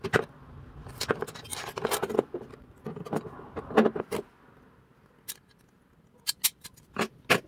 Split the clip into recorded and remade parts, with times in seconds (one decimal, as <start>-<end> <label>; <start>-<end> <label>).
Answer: 0.0-7.5 recorded